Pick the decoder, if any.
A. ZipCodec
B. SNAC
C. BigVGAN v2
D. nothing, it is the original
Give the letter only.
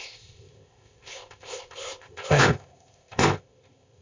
A